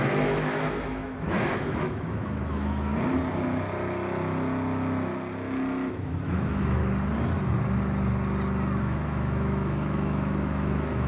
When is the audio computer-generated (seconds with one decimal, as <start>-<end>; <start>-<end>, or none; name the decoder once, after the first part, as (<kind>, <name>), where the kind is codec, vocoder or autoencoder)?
0.0-2.9 (autoencoder, DAC-VAE); 5.9-6.8; 8.8-11.1